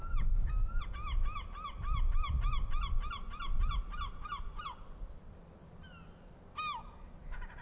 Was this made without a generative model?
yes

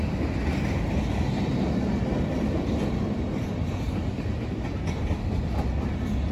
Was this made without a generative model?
yes